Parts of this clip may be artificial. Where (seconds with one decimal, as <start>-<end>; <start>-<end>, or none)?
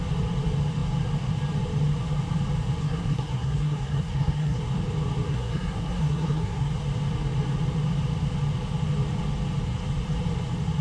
2.8-4.6; 5.3-6.7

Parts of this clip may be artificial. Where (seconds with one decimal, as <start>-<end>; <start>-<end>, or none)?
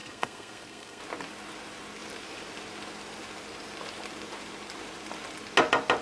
0.0-1.0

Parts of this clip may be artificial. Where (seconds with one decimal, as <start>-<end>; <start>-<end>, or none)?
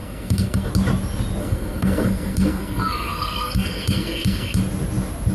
0.0-0.7; 1.4-4.6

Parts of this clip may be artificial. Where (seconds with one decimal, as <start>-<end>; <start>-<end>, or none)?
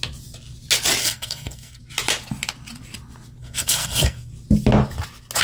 1.0-1.8; 3.4-4.3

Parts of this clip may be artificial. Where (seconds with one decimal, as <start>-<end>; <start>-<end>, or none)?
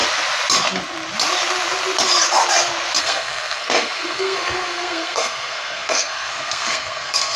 3.0-7.4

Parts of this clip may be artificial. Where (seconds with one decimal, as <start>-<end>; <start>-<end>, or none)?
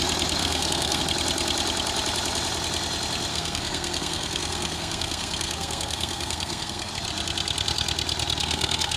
0.4-1.0; 3.3-6.9; 8.4-9.0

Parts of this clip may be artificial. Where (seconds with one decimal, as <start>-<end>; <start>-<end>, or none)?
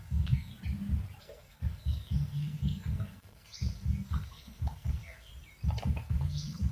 0.0-0.5; 1.2-5.3; 5.8-6.7